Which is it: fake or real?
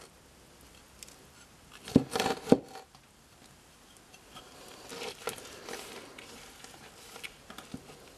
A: real